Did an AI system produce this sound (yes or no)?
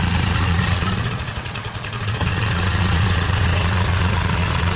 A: yes